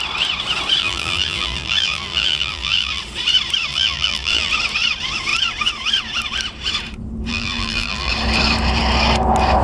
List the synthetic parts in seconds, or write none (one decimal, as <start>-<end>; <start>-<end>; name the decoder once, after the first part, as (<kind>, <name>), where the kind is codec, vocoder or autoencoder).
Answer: 0.8-3.0 (vocoder, BigVGAN v2); 3.7-4.5; 7.3-8.1